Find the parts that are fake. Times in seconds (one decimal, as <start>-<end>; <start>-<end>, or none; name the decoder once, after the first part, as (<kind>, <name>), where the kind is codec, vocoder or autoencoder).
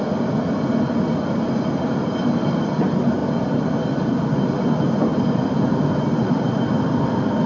none